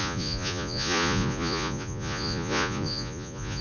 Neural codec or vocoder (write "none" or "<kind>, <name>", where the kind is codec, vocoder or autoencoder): vocoder, Vocos